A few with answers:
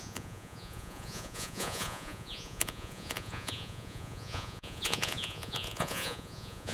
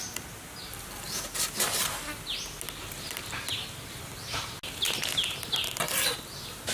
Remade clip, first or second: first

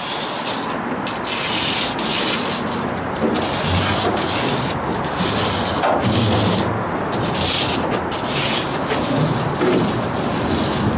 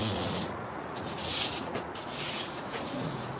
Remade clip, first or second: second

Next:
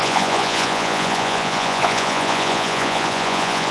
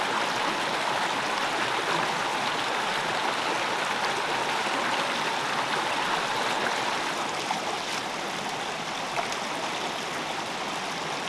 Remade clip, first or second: first